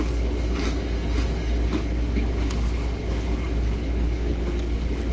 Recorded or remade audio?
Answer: remade